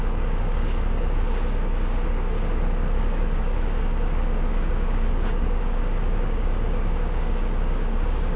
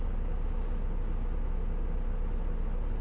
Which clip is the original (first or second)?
second